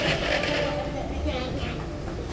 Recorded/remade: recorded